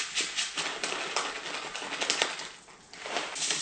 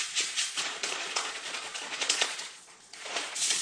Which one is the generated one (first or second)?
second